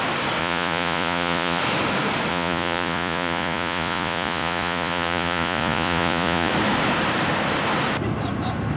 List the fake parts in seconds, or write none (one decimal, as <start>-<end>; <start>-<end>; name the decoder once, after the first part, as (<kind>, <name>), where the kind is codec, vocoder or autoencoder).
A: 0.4-1.6 (vocoder, Vocos); 2.3-6.5